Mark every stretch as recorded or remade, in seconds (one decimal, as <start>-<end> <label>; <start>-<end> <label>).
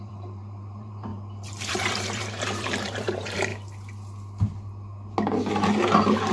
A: 0.0-1.1 remade; 1.1-1.7 recorded; 1.7-3.5 remade; 3.5-6.3 recorded